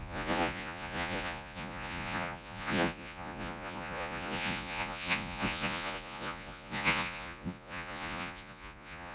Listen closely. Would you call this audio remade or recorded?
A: remade